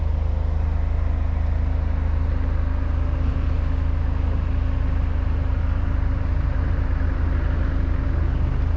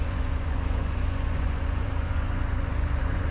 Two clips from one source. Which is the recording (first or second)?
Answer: first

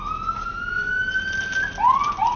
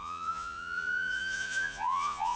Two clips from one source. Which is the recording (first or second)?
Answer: first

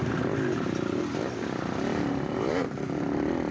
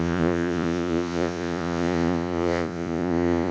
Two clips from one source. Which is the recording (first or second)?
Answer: first